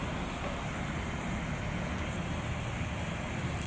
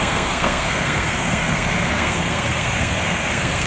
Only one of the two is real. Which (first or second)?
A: first